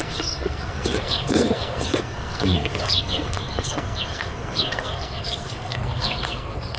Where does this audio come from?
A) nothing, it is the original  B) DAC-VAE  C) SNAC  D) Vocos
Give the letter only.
C